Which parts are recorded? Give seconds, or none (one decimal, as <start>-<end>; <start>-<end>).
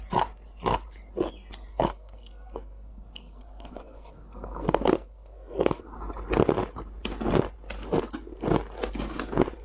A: 0.0-1.7; 5.8-9.6